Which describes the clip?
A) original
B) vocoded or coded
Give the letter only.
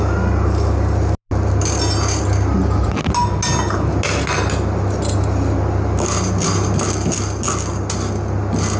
A